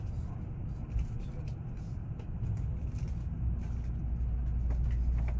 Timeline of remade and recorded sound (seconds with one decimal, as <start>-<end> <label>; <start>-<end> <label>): 0.0-2.0 recorded; 2.0-3.7 remade; 3.7-5.4 recorded